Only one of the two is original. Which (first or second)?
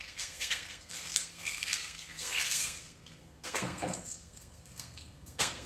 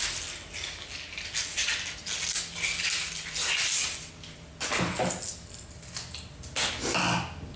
second